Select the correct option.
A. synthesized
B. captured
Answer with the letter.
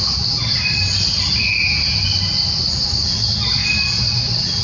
B